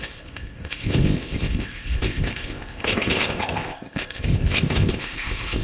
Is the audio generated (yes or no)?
yes